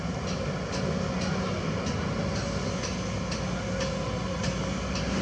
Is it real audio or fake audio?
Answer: real